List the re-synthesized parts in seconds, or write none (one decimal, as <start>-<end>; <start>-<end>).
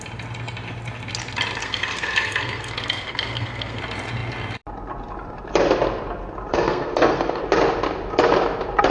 1.6-3.8; 6.5-7.4